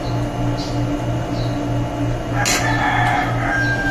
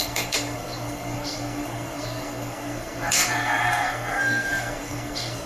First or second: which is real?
first